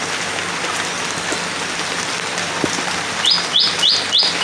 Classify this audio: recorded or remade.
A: recorded